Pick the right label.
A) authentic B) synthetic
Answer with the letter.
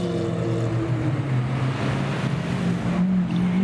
A